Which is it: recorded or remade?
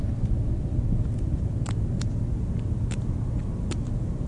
recorded